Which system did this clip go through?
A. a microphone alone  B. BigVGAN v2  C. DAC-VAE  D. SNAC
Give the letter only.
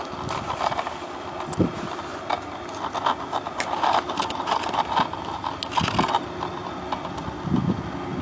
A